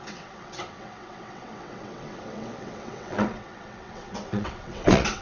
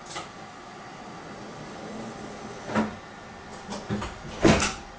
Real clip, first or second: second